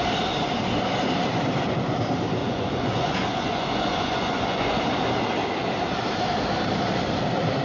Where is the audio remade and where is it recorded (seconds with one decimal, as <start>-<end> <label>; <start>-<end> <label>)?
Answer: 0.0-2.4 recorded; 2.4-4.8 remade; 4.8-7.6 recorded